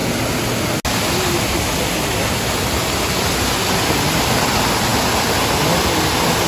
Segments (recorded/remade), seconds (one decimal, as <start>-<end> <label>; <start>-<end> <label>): 0.0-6.5 recorded